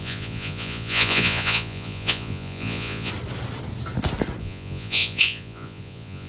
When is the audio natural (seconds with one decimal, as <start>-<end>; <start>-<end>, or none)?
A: 3.1-4.4